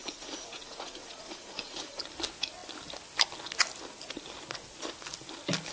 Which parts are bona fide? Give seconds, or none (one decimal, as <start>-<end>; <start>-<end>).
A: 2.0-5.7